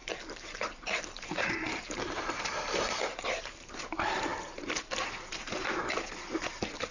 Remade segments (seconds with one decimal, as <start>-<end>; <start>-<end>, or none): 0.0-3.8